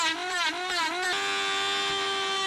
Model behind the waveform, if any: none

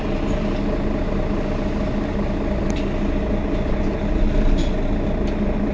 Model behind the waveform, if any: none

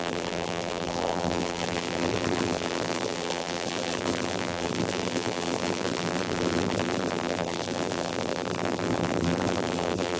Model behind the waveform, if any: vocoder, BigVGAN v2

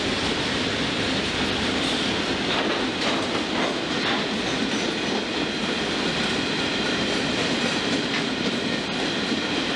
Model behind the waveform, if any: none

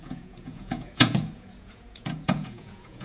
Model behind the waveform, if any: vocoder, Vocos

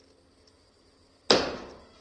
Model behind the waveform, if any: none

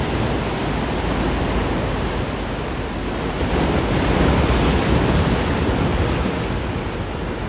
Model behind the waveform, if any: none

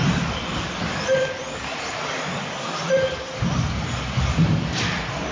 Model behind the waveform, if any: vocoder, BigVGAN v2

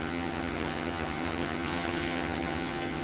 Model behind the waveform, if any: vocoder, HiFi-GAN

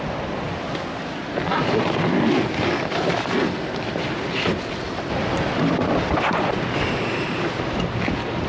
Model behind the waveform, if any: none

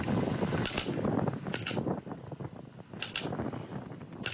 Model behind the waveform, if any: none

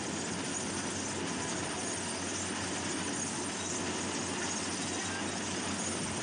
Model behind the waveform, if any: none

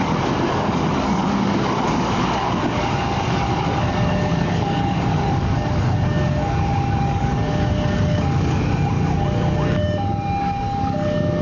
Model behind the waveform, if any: codec, DAC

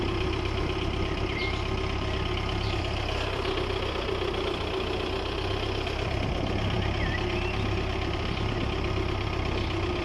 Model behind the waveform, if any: vocoder, BigVGAN v2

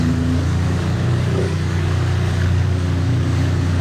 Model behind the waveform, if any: codec, DAC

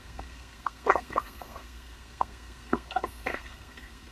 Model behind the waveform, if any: codec, SNAC